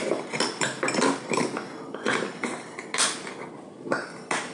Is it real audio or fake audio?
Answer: real